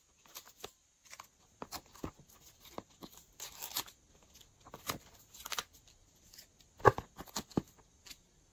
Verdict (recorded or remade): recorded